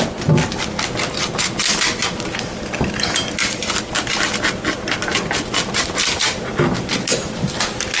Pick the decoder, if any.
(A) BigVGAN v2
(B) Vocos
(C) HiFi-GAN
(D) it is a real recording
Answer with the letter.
D